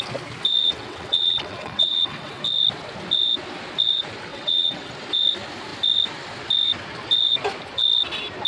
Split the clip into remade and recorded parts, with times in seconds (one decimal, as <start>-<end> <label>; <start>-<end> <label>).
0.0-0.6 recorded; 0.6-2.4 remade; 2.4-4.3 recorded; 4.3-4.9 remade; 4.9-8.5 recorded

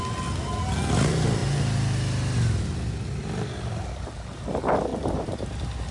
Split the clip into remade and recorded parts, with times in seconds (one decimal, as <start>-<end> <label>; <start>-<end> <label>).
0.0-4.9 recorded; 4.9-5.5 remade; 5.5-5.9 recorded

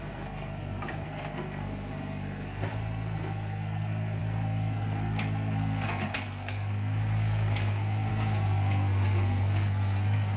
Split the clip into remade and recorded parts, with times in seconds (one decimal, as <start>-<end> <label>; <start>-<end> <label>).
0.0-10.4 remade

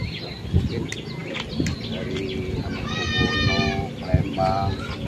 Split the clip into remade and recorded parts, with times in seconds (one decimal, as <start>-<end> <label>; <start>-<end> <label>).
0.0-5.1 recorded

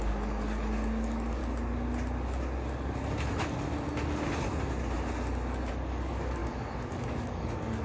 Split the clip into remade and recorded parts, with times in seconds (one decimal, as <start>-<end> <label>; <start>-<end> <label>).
0.0-1.4 remade; 1.4-5.7 recorded; 5.7-7.8 remade

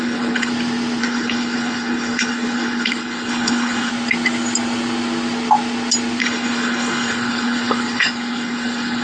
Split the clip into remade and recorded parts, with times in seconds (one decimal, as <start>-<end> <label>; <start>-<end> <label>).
0.0-0.5 remade; 0.5-1.0 recorded; 1.0-3.9 remade; 3.9-6.2 recorded; 6.2-9.0 remade